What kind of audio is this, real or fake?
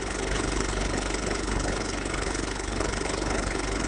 fake